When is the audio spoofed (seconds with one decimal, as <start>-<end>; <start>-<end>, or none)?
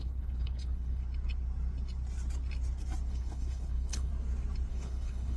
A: 0.0-1.0; 3.1-4.1; 4.7-5.4